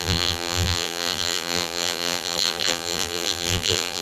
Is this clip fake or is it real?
fake